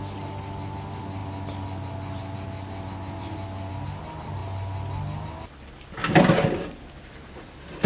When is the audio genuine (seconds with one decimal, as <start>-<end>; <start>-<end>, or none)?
0.0-7.9